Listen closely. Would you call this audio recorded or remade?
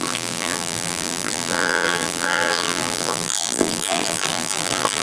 remade